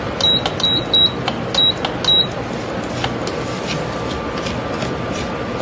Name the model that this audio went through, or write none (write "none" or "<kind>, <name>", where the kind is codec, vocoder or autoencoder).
none